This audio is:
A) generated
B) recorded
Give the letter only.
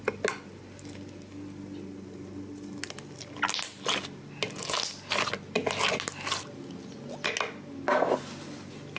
B